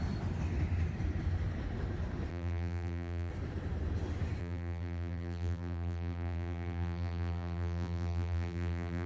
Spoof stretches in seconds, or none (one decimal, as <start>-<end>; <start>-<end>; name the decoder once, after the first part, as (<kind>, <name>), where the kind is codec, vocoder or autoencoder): 2.3-3.3 (vocoder, BigVGAN v2); 4.4-9.1